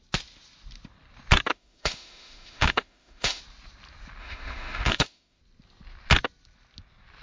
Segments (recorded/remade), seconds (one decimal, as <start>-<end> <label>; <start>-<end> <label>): 0.0-1.5 recorded; 1.5-3.4 remade; 3.4-4.2 recorded; 4.2-5.4 remade; 5.4-7.2 recorded